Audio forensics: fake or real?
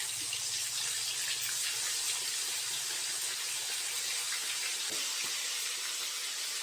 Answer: real